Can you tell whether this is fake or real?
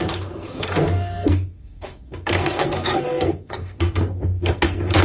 fake